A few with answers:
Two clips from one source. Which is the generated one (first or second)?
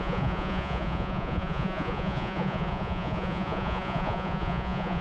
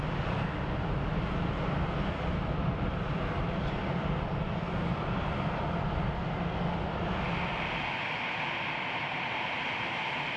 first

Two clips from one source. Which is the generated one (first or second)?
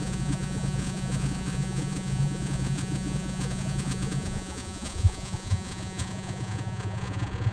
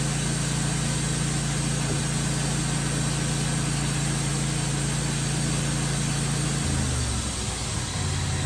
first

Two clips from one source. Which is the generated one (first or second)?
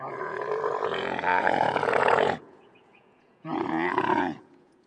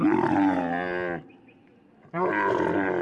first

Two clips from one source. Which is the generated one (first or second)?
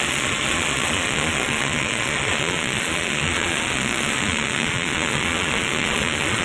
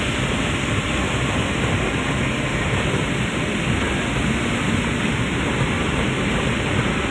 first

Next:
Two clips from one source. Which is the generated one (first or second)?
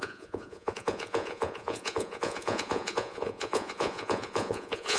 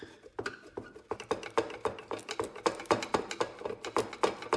first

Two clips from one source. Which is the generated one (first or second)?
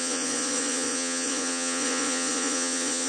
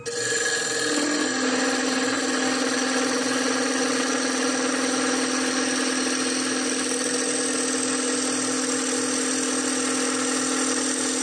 first